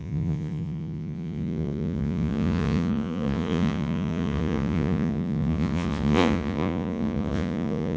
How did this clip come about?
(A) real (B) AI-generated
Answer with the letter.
B